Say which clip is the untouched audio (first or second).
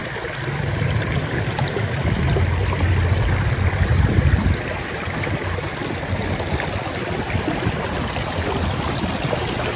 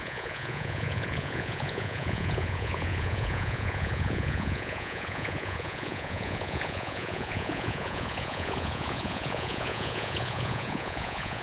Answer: first